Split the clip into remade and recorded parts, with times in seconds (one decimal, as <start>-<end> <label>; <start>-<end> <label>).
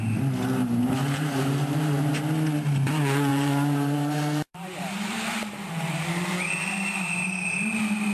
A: 0.0-0.6 recorded; 0.6-2.0 remade; 2.0-3.3 recorded; 3.3-7.6 remade; 7.6-8.1 recorded